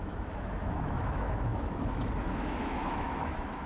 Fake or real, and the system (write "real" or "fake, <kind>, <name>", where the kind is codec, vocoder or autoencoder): fake, autoencoder, DAC-VAE